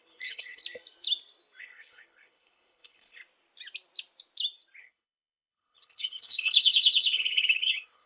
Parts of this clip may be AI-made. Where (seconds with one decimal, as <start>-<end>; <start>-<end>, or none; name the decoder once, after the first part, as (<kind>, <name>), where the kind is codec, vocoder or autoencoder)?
0.0-0.6 (codec, HILCodec); 1.6-3.2; 4.8-8.1